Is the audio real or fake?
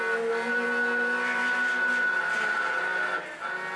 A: real